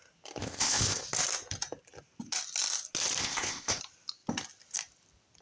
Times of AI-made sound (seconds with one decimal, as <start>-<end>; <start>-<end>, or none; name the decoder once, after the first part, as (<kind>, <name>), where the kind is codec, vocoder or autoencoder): 0.4-1.0 (codec, ZipCodec); 3.2-3.8